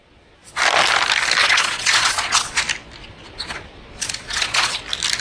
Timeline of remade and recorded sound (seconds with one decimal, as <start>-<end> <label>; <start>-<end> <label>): 0.0-0.6 remade; 0.6-1.4 recorded; 1.4-2.6 remade; 2.6-3.0 recorded; 3.0-4.8 remade; 4.8-5.2 recorded